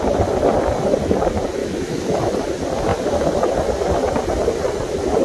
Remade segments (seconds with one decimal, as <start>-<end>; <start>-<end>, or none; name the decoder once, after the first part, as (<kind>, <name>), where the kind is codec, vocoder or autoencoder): 1.6-2.3 (autoencoder, DAC-VAE)